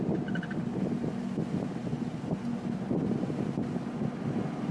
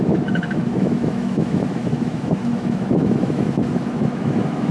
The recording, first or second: first